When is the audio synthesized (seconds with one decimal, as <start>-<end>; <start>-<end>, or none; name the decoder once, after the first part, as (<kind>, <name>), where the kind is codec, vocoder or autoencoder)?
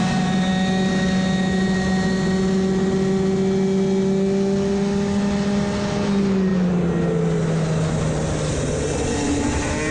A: none